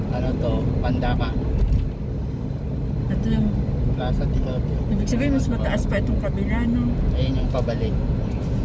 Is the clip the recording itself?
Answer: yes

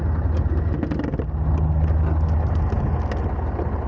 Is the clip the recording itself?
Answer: yes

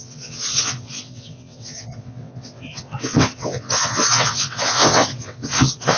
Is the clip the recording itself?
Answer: no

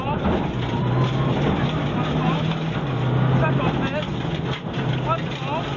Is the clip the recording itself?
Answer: yes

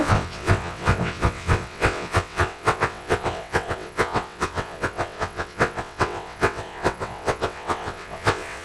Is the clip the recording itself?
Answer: no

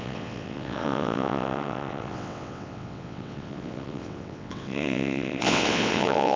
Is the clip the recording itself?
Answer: no